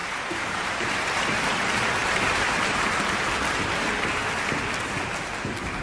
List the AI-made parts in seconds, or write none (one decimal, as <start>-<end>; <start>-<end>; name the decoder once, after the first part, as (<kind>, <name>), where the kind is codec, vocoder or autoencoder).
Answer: 0.0-0.9 (vocoder, BigVGAN v2); 2.0-3.0